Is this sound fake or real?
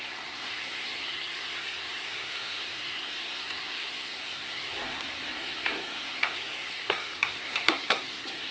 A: fake